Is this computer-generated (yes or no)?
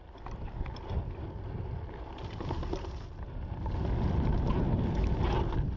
no